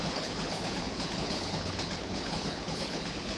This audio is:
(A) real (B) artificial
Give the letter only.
B